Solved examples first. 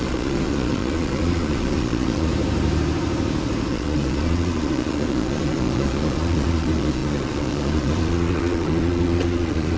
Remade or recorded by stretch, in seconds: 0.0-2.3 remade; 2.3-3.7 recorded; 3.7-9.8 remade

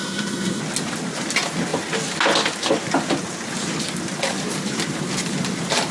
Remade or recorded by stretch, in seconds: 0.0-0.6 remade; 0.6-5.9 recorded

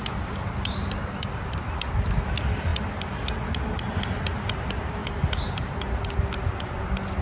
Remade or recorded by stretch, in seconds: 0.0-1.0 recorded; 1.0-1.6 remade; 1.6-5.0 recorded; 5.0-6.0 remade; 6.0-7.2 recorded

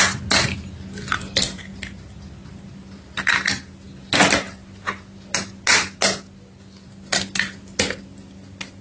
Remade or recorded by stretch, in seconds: 0.0-8.8 recorded

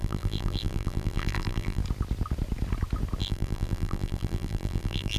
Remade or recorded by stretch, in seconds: 0.0-1.8 remade; 1.8-3.2 recorded; 3.2-5.2 remade